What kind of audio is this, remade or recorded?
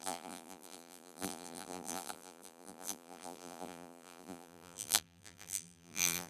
remade